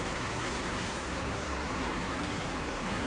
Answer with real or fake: fake